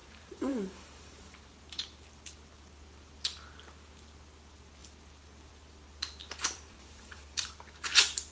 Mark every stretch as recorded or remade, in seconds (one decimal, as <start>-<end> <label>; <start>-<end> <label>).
0.0-1.6 remade; 1.6-6.2 recorded; 6.2-7.5 remade; 7.5-8.3 recorded